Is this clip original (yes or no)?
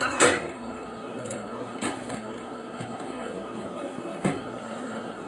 no